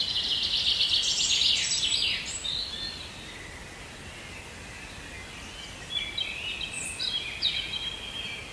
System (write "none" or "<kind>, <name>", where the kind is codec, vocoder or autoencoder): none